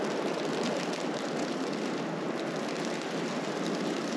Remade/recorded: recorded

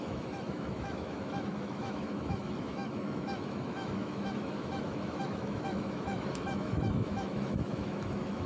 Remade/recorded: remade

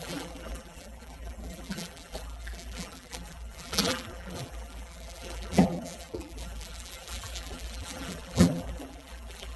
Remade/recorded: remade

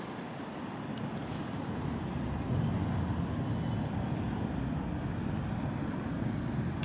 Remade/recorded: recorded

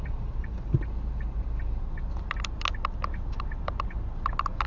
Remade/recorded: recorded